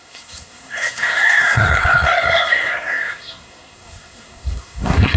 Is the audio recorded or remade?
remade